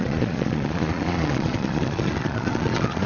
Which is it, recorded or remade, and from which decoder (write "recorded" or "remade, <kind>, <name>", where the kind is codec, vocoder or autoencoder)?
remade, vocoder, Vocos